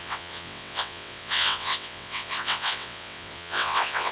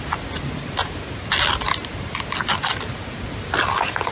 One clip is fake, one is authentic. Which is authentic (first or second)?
second